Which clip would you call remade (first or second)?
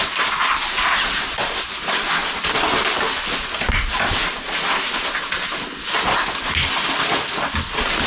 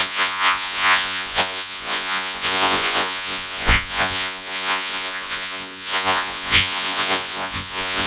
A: second